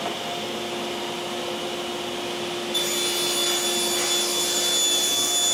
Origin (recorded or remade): recorded